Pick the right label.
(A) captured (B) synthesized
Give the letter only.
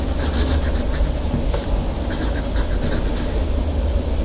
A